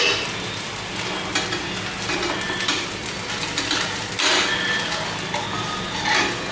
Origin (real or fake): real